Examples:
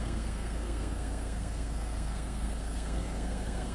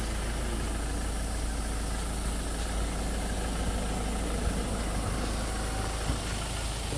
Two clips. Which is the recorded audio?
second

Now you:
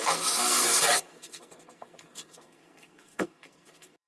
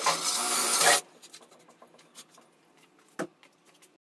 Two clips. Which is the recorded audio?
second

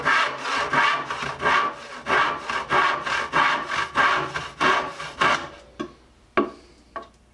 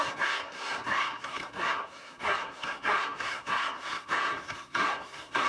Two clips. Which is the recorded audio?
first